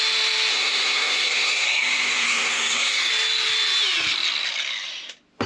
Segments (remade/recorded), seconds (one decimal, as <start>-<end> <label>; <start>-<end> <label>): 0.0-0.5 recorded; 0.5-3.1 remade; 3.1-5.5 recorded